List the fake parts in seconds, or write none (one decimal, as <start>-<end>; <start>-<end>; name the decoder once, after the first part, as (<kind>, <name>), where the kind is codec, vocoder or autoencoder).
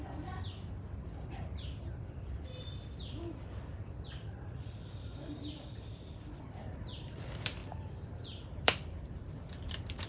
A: 0.0-7.6 (vocoder, BigVGAN v2); 8.1-10.1